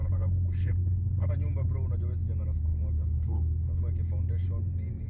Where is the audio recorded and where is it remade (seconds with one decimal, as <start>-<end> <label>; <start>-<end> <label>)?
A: 0.0-1.3 remade; 1.3-2.7 recorded; 2.7-3.8 remade; 3.8-5.1 recorded